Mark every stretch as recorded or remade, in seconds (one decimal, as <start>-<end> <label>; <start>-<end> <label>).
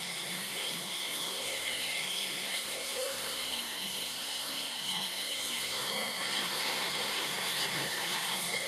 0.0-8.7 remade